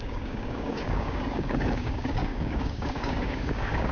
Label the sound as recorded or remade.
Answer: remade